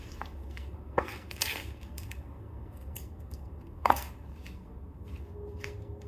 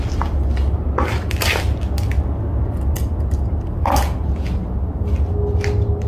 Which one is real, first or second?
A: second